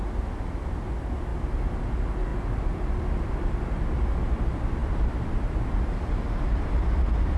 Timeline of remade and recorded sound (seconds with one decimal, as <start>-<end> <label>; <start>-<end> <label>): 0.0-2.3 recorded; 2.3-3.9 remade; 3.9-4.8 recorded; 4.8-7.0 remade; 7.0-7.4 recorded